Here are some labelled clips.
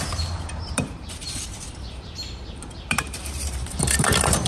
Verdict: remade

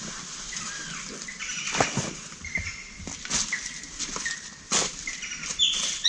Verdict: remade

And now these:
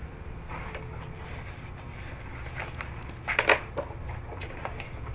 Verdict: recorded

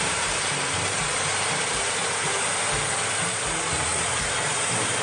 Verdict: remade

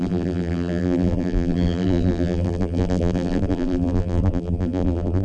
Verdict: remade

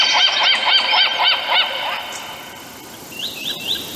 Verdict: remade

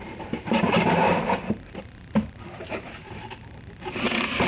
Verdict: remade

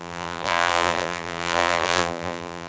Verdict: remade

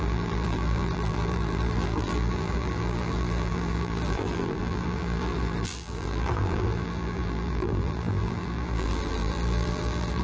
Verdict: remade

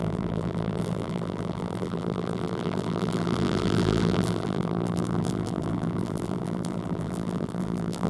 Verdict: remade